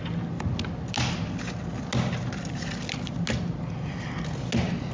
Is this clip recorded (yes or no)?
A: yes